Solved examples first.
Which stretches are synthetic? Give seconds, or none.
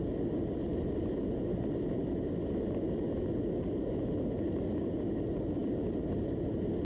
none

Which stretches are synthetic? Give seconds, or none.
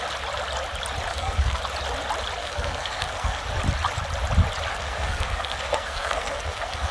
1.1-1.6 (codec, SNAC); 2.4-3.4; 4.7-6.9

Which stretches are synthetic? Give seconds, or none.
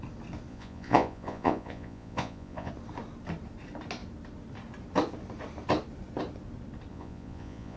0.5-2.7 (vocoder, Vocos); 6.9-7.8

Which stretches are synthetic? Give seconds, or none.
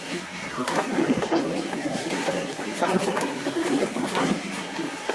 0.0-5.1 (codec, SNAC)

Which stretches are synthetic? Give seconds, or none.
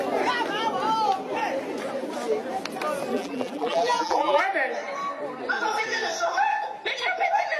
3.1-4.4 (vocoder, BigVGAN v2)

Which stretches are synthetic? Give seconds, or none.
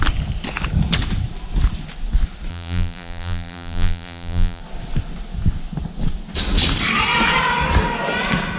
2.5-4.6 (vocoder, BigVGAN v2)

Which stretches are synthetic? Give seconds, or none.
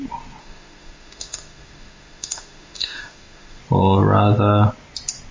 0.4-3.6 (autoencoder, DAC-VAE)